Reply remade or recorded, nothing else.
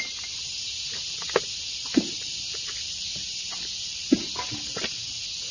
recorded